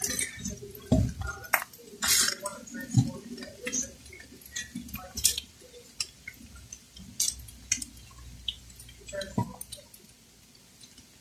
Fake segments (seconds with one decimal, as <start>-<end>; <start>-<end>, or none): none